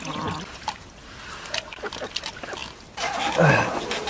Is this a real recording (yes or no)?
yes